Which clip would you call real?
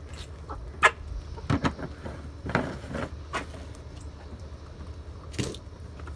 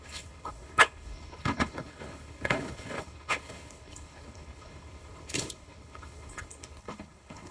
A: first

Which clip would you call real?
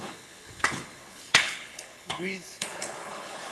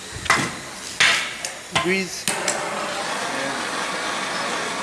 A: second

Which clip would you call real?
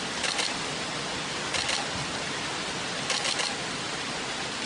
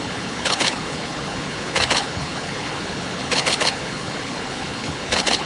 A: first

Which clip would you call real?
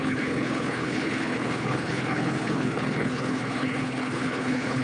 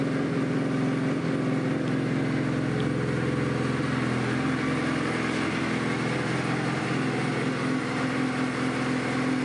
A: second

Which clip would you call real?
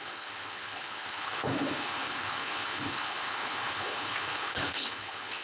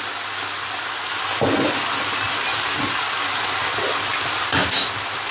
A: second